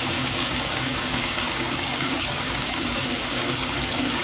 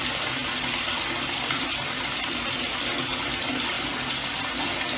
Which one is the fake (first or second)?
first